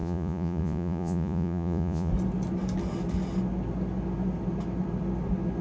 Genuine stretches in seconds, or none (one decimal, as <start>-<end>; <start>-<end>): 2.1-5.6